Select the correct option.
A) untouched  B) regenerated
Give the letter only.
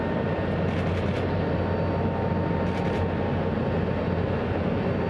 A